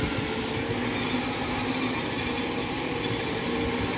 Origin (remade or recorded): recorded